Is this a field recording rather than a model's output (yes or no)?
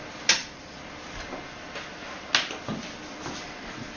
yes